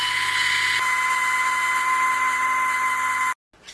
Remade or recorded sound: recorded